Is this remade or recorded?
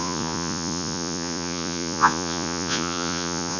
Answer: remade